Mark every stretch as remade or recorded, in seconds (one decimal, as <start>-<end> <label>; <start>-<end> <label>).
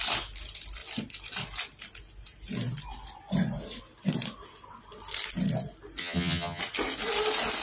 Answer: 0.0-6.0 recorded; 6.0-6.6 remade; 6.6-7.6 recorded